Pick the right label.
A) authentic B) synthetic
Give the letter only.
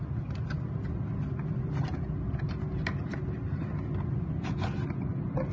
A